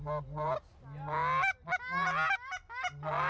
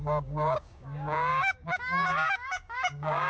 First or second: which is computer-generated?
second